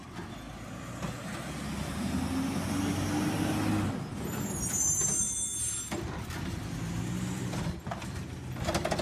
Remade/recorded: recorded